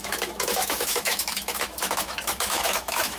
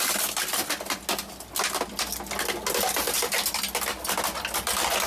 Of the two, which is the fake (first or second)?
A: first